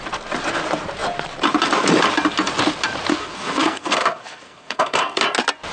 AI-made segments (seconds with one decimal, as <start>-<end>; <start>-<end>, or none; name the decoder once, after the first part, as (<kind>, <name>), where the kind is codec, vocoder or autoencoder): 3.1-5.2 (codec, SNAC)